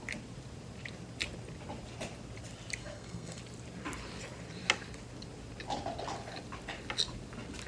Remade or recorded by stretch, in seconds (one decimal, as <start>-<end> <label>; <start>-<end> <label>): 0.0-2.8 recorded; 2.8-3.4 remade; 3.4-7.7 recorded